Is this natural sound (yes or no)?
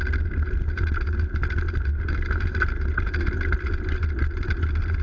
yes